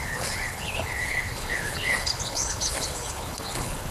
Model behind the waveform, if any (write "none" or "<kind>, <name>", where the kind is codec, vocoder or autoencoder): codec, HILCodec